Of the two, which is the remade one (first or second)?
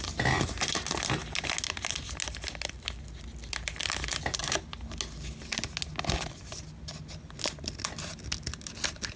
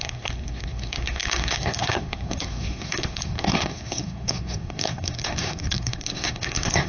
second